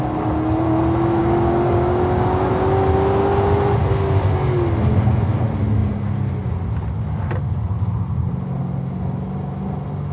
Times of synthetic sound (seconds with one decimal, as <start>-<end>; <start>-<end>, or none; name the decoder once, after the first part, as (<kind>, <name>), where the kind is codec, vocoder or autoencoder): 1.2-2.5 (codec, DAC)